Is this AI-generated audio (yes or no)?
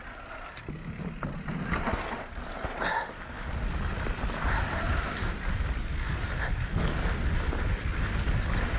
no